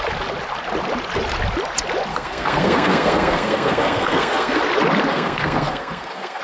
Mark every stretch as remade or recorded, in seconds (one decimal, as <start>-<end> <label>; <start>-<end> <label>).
0.0-2.1 recorded; 2.1-4.6 remade; 4.6-5.1 recorded; 5.1-6.4 remade

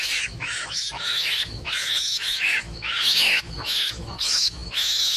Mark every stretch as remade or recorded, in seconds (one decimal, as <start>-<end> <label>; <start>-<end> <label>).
0.0-5.2 remade

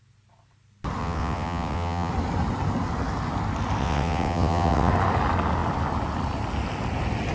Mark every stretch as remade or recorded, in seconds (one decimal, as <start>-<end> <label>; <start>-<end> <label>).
0.0-1.0 recorded; 1.0-2.1 remade; 2.1-3.8 recorded; 3.8-4.9 remade; 4.9-7.3 recorded

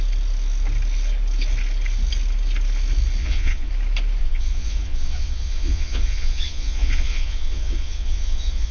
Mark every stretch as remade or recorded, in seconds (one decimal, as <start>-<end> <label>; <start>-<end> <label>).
0.0-3.2 recorded; 3.2-3.7 remade; 3.7-4.2 recorded; 4.2-8.7 remade